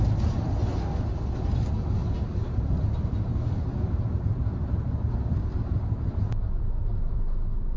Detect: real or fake real